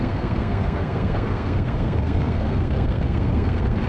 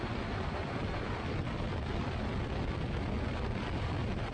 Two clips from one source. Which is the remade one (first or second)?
first